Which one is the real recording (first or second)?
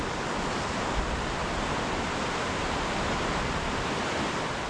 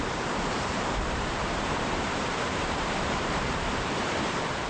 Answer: first